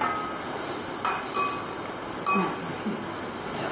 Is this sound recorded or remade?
recorded